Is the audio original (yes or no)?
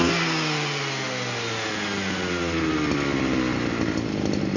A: yes